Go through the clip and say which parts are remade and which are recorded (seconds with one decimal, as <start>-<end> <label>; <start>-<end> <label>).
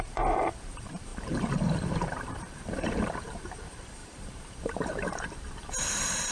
0.0-6.3 remade